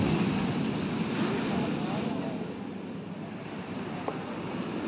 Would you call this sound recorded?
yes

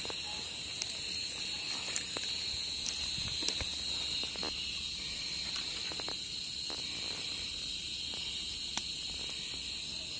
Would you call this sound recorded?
yes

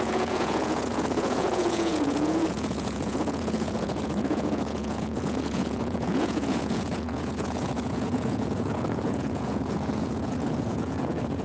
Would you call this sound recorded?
no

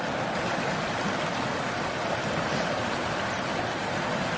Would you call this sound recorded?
yes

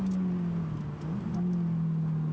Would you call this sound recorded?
yes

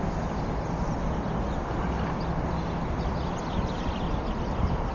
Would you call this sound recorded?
yes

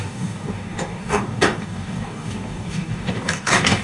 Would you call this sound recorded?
no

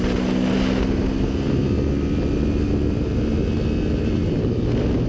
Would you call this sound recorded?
yes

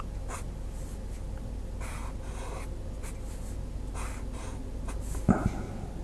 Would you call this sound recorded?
yes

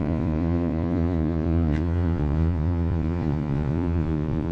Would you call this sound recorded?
no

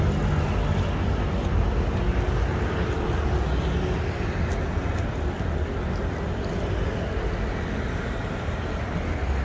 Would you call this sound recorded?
yes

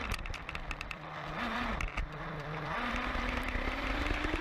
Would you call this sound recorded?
no